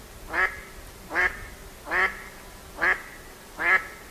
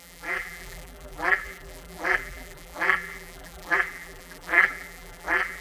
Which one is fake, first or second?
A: second